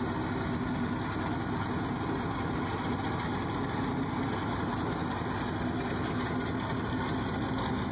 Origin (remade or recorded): recorded